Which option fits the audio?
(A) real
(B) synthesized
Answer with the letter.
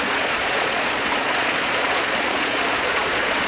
B